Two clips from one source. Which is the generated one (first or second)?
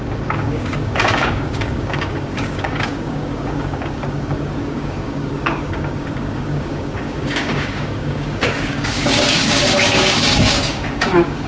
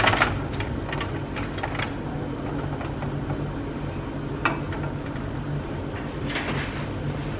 first